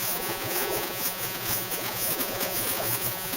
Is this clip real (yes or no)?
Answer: no